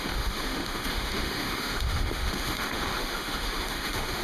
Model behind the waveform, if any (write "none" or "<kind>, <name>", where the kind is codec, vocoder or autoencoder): autoencoder, DAC-VAE